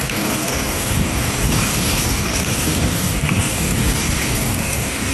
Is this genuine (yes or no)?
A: no